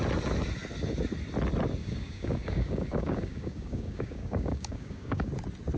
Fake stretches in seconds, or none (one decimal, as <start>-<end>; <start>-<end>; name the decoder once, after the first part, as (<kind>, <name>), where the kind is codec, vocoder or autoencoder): 1.8-5.3 (codec, DAC)